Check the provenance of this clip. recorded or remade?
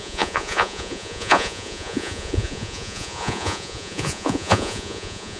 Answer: remade